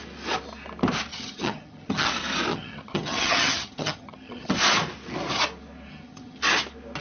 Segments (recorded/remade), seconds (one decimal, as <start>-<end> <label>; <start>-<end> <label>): 0.0-1.1 recorded; 1.1-2.1 remade; 2.1-2.5 recorded; 2.5-4.5 remade; 4.5-5.9 recorded; 5.9-6.4 remade; 6.4-7.0 recorded